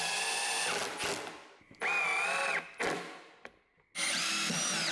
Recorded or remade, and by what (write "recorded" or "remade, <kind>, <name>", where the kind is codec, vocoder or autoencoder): recorded